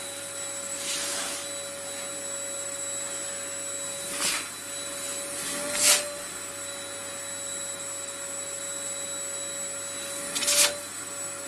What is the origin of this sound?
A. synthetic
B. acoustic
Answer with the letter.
B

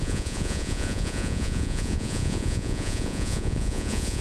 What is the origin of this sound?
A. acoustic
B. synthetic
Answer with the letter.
B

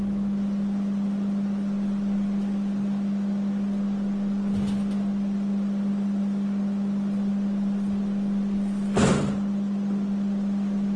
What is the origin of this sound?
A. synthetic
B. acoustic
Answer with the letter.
B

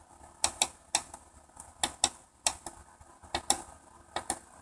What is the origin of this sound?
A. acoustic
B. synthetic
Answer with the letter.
A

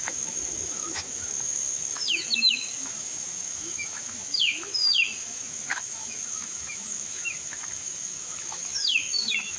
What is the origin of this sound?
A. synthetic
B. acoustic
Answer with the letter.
A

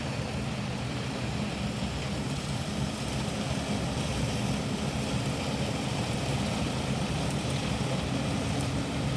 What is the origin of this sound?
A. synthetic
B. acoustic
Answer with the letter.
B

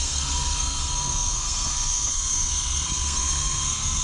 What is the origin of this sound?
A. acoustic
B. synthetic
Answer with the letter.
B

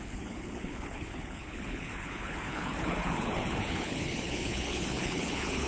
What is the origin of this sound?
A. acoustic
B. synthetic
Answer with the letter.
B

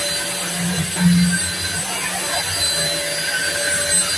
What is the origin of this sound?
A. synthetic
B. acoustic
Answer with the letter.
B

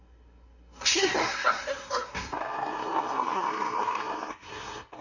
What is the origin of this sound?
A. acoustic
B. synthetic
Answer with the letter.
B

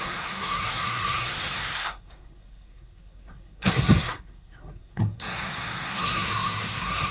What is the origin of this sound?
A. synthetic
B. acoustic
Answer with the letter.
A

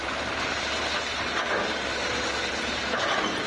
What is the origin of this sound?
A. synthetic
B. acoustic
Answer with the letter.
A